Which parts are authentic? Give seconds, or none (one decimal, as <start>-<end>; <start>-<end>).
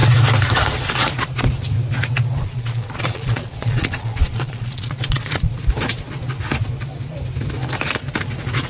0.0-2.4; 5.5-8.7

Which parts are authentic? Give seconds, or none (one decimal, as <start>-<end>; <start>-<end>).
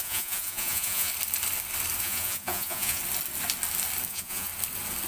1.1-2.0; 3.0-4.1; 4.5-5.1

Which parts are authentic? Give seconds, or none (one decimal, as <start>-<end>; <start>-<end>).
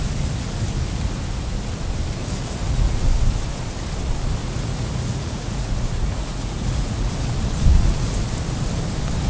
0.0-2.2; 3.1-4.4; 7.1-7.7; 8.2-9.3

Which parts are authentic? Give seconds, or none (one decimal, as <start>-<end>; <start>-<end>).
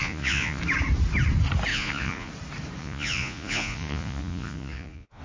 0.6-1.7; 2.3-2.8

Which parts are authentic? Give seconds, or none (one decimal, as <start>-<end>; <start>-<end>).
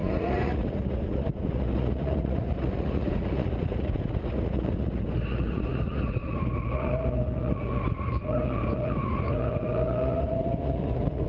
none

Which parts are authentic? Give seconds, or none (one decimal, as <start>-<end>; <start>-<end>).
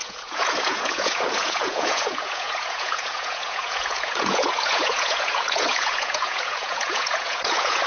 none